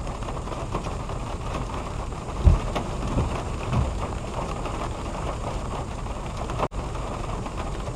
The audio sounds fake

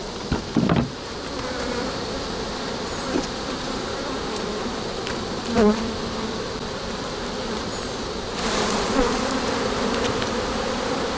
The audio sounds fake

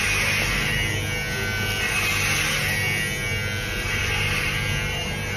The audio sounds real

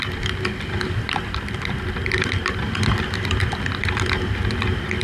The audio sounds real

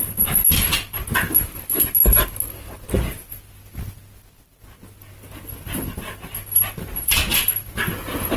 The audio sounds real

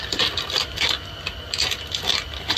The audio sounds real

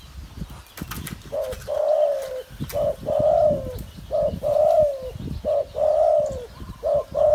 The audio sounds real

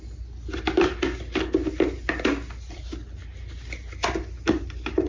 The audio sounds real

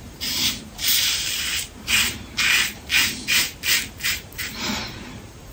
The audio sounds fake